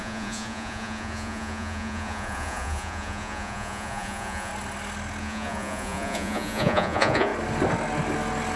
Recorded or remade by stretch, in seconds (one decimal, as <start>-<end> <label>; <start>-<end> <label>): 0.0-4.5 remade; 4.5-5.2 recorded; 5.2-7.3 remade; 7.3-8.6 recorded